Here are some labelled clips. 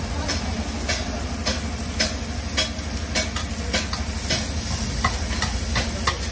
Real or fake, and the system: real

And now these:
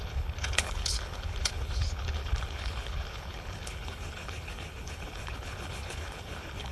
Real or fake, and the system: fake, codec, HILCodec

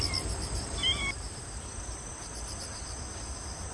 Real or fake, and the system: real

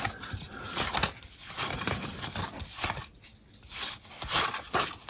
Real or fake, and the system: real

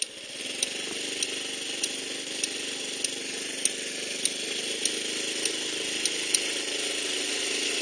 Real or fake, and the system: real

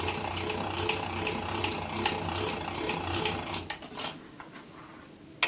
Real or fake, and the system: real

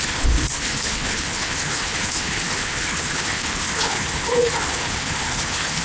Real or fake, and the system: fake, codec, HILCodec